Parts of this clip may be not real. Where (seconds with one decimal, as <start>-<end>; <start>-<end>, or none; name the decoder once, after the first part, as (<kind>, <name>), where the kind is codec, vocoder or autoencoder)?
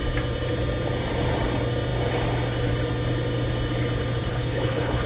4.3-5.1 (codec, HILCodec)